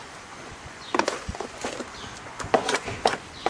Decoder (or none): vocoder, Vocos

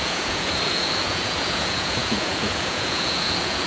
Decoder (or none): vocoder, Vocos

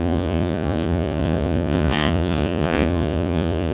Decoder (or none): vocoder, Vocos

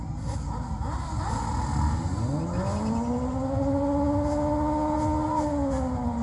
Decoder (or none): none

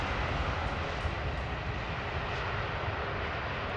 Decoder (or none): none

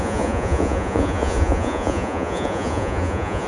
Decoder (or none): vocoder, Vocos